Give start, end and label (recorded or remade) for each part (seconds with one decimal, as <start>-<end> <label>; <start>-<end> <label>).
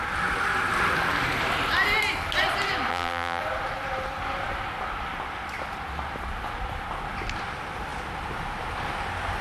0.0-2.9 recorded; 2.9-3.4 remade; 3.4-9.4 recorded